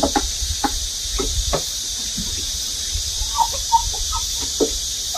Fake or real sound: fake